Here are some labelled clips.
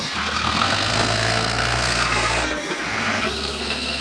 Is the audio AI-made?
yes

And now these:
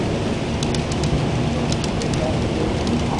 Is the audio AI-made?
no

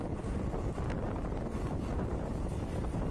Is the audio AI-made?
no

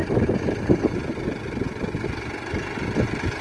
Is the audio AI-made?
no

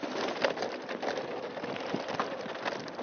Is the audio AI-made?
no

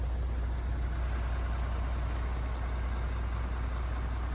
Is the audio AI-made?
no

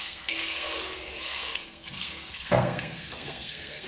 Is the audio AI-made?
yes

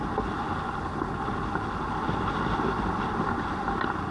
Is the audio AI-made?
no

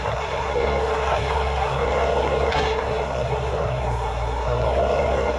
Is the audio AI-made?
yes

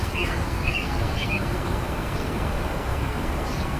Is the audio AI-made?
yes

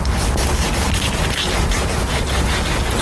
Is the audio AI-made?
no